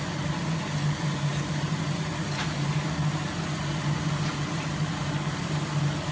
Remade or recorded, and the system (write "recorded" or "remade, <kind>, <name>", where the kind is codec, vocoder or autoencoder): recorded